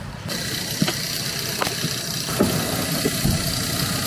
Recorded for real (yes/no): yes